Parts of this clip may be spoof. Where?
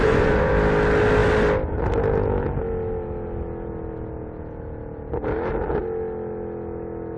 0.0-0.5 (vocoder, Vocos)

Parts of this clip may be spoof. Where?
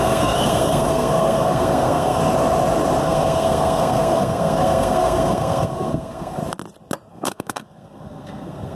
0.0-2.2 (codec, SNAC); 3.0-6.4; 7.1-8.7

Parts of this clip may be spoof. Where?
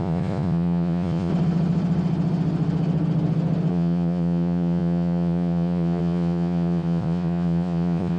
0.0-1.3 (vocoder, Vocos); 3.7-8.2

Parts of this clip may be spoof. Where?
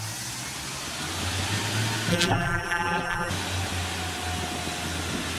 2.1-3.3 (vocoder, BigVGAN v2)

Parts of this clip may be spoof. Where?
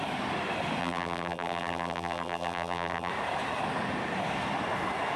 0.8-3.1 (vocoder, BigVGAN v2)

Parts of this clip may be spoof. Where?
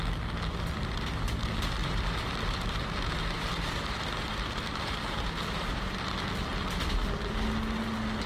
1.8-6.0 (vocoder, BigVGAN v2)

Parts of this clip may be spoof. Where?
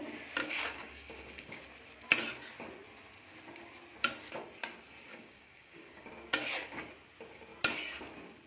0.4-1.6 (codec, DAC); 5.1-6.1